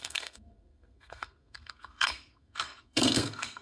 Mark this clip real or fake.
fake